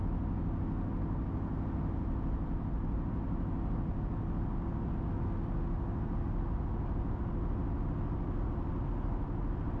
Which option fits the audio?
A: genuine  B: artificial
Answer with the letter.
A